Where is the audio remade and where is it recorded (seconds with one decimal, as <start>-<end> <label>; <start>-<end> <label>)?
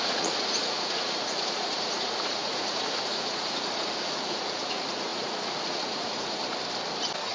0.0-6.4 remade; 6.4-7.3 recorded